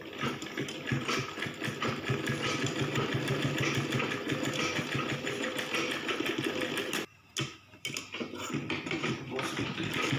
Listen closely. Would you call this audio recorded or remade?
recorded